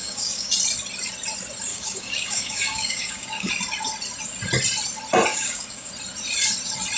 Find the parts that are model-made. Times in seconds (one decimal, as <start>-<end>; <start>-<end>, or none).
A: 0.0-0.5; 1.7-3.5; 5.3-5.9